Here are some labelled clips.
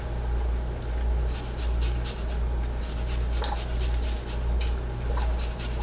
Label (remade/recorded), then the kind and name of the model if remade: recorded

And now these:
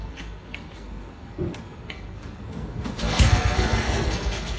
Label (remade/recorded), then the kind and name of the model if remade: remade, codec, SNAC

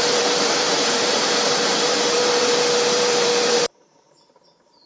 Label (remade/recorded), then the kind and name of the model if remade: remade, vocoder, BigVGAN v2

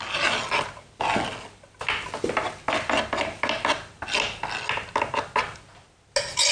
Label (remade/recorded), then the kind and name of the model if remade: recorded